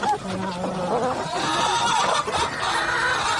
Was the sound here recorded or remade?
recorded